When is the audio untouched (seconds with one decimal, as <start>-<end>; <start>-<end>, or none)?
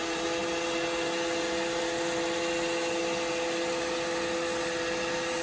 0.0-5.4